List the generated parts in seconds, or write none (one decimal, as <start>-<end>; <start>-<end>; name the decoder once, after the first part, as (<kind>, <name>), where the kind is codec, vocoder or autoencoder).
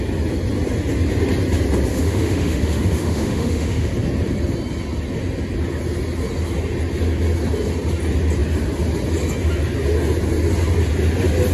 1.9-3.9 (autoencoder, DAC-VAE)